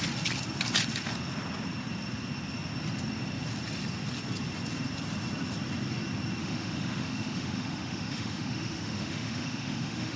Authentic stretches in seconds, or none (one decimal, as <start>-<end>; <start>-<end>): 0.0-6.4